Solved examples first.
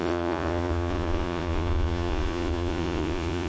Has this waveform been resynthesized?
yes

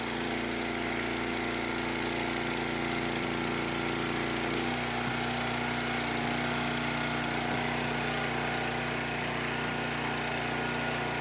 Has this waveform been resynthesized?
no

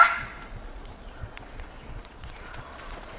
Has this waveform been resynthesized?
yes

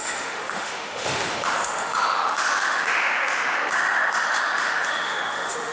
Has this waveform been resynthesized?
yes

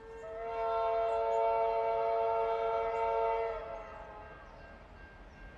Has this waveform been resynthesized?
no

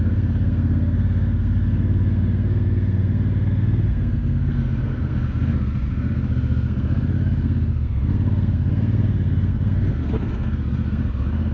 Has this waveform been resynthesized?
yes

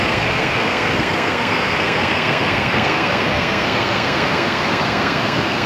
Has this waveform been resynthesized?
yes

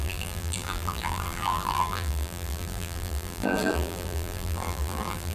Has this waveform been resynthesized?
yes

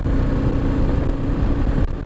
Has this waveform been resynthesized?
no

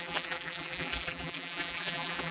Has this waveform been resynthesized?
yes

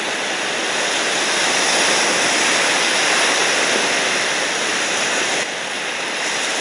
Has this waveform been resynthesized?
no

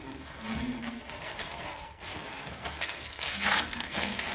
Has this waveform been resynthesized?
yes